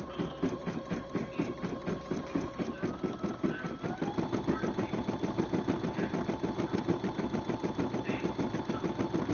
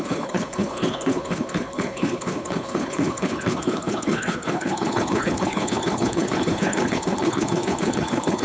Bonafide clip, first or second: first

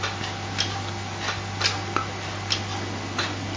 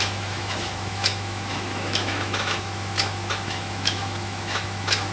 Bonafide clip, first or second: first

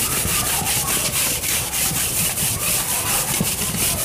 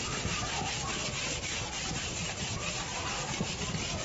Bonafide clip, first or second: second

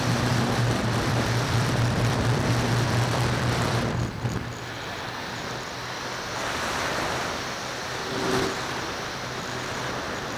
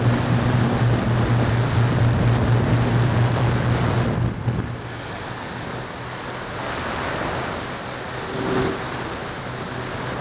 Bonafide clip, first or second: second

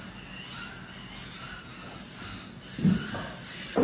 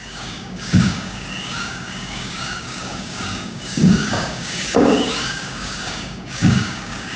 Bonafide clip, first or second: first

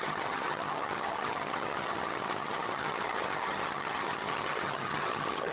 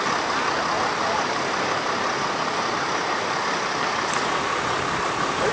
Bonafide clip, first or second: second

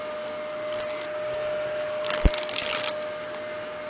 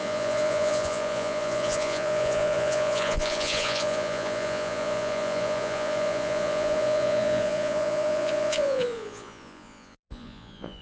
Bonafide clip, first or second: first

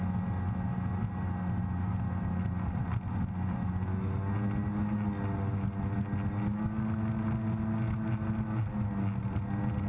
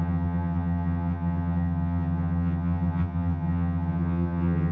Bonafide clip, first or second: first